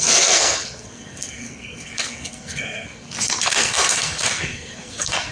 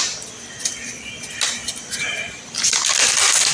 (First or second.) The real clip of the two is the second